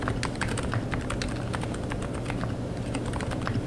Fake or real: real